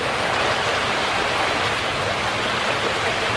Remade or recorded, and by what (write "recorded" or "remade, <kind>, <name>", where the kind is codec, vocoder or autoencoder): recorded